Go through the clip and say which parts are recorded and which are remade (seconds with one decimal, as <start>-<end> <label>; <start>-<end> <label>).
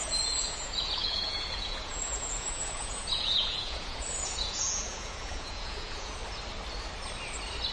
0.0-6.2 remade; 6.2-7.7 recorded